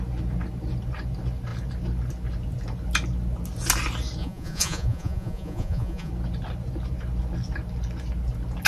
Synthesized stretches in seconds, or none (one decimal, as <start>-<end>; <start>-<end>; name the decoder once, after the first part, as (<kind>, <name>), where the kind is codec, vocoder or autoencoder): 4.2-6.1 (vocoder, Vocos)